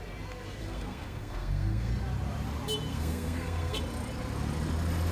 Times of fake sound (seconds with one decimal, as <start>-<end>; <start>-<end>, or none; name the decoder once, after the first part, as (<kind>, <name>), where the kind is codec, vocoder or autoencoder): 0.6-1.9 (codec, SNAC); 2.9-3.8